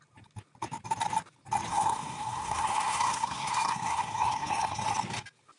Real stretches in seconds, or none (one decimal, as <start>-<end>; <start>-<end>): 0.0-1.7; 4.8-5.6

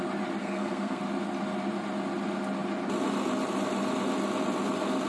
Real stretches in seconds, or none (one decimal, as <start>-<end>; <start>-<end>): 0.0-0.4; 1.0-5.1

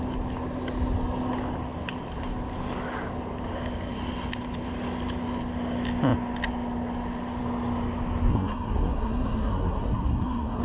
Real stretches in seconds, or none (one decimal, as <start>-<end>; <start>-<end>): 0.0-8.3

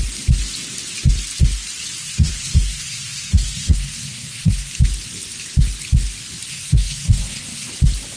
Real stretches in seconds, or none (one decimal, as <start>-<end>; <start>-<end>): 0.0-2.0; 4.7-6.5; 7.7-8.2

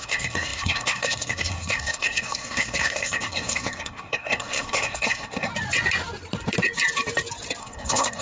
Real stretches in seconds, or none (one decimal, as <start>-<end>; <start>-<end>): 5.5-7.6